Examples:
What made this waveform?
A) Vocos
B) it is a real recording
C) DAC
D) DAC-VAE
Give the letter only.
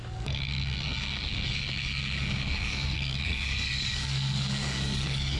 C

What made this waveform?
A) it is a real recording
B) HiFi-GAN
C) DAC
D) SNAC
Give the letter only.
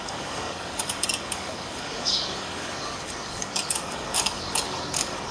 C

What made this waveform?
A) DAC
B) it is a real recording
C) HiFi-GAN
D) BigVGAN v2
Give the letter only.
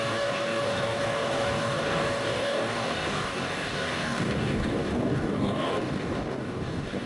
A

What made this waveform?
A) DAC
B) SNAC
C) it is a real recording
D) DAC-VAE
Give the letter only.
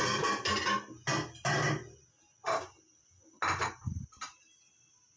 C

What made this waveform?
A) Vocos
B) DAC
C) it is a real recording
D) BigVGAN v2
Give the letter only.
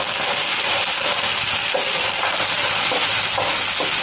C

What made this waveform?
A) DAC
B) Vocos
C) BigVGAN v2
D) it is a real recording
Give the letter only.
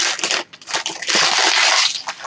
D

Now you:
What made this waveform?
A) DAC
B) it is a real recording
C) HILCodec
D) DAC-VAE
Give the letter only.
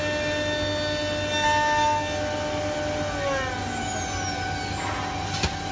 B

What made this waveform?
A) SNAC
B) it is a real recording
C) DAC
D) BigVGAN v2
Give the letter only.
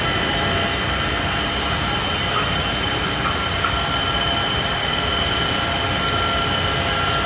B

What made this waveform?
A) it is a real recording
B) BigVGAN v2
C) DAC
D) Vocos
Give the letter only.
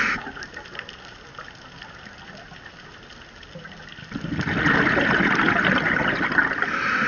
A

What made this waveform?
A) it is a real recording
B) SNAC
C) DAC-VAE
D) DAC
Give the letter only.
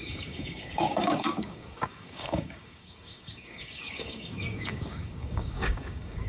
D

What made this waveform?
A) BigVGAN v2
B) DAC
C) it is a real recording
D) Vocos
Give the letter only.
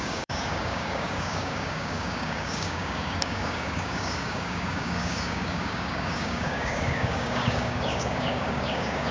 B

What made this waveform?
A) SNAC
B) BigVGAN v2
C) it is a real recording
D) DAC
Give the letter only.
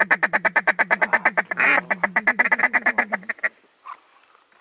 C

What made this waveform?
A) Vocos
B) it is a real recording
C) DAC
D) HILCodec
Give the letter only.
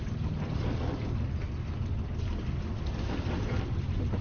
B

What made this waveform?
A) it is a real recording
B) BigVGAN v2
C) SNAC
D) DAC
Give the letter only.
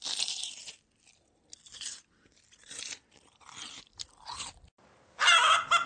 A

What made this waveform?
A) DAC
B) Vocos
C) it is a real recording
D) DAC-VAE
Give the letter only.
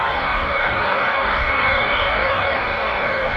A